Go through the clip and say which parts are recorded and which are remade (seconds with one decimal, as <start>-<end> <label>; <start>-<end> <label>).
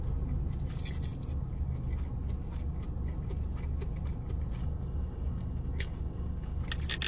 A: 0.0-4.6 recorded; 4.6-6.6 remade; 6.6-7.1 recorded